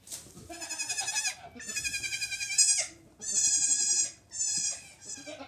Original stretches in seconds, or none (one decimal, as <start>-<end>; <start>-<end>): 0.0-5.5